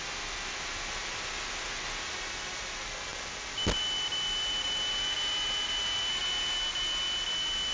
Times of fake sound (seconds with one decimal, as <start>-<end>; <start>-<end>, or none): none